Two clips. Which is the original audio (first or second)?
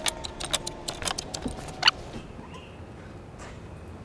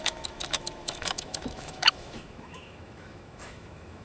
first